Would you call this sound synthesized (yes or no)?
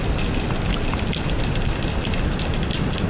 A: no